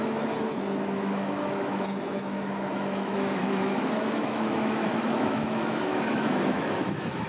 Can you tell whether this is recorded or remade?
remade